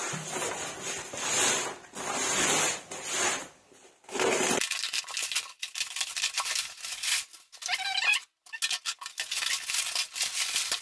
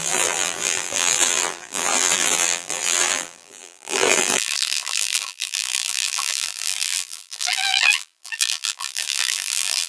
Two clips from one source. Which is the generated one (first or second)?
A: second